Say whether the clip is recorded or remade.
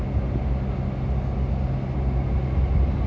recorded